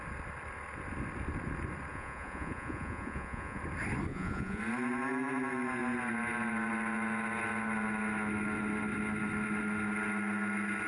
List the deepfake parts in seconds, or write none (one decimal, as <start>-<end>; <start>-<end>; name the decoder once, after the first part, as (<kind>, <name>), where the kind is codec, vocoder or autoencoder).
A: 1.9-3.6 (vocoder, Vocos); 4.1-4.6